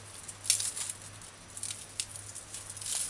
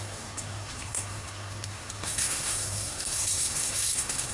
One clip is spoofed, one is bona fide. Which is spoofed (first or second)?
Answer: second